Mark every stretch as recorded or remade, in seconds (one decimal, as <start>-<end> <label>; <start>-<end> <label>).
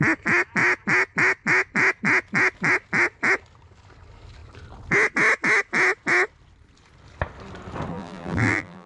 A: 0.0-7.9 recorded; 7.9-8.9 remade